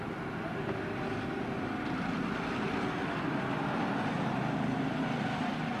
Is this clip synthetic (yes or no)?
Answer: no